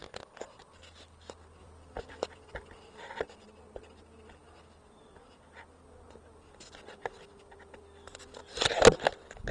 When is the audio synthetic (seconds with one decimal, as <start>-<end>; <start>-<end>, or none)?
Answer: 0.0-0.6; 1.6-3.2